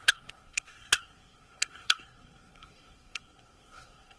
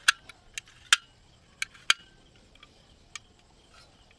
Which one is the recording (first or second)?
second